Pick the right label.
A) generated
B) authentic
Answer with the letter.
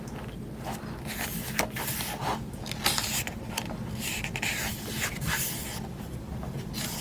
B